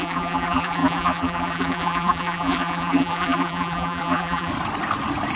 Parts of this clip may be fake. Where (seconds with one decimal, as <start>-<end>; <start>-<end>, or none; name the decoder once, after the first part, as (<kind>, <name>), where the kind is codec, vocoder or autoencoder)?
0.0-4.5 (vocoder, BigVGAN v2)